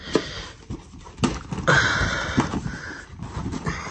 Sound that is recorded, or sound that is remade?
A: recorded